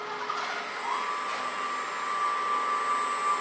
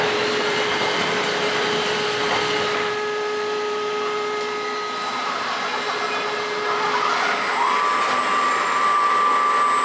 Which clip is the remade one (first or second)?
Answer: second